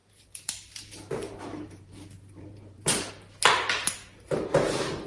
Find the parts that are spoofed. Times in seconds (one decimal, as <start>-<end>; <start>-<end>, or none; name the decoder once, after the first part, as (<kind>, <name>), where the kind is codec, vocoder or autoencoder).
0.0-3.1 (vocoder, BigVGAN v2)